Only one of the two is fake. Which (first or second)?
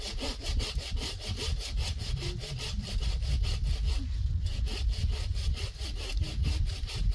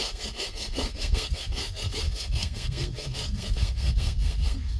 second